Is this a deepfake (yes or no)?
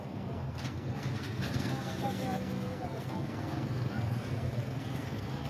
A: yes